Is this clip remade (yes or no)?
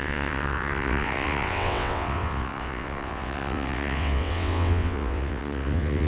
yes